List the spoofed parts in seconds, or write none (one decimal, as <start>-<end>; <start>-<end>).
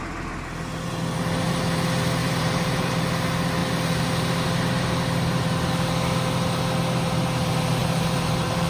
2.2-3.1; 7.8-8.7